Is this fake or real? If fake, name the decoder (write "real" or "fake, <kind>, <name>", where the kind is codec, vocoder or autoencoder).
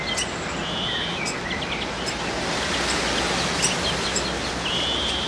real